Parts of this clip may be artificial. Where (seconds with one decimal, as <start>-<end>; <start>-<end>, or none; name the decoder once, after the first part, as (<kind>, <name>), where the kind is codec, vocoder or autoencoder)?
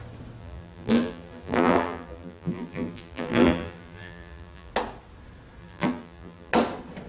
0.4-4.7 (vocoder, BigVGAN v2); 5.6-6.5